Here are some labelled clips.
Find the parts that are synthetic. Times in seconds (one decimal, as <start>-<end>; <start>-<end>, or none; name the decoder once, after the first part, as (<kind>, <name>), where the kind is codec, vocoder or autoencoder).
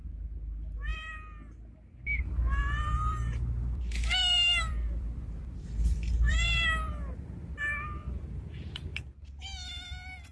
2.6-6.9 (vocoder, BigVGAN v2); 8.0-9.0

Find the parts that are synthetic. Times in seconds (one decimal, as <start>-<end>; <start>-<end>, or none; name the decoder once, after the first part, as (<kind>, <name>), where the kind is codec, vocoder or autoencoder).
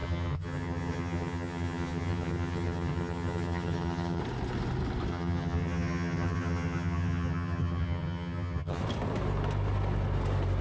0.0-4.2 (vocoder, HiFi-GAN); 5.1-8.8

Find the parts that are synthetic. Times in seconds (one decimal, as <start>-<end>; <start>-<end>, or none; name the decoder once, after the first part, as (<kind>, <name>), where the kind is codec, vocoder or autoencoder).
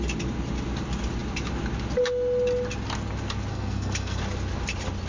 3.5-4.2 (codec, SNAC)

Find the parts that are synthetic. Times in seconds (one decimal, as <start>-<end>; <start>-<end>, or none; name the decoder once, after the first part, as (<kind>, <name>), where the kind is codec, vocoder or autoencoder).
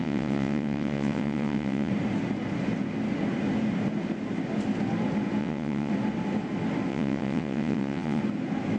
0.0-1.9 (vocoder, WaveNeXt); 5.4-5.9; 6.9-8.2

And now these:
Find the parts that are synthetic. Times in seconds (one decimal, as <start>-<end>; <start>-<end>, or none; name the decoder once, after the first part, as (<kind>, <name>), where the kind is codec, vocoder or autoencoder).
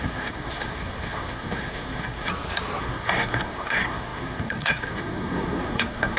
0.0-2.3 (codec, SNAC); 2.8-6.2